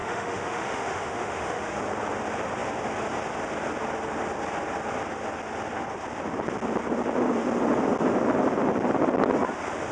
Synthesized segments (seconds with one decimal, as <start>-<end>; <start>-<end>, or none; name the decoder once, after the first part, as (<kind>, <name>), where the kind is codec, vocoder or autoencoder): 0.0-1.8 (autoencoder, DAC-VAE)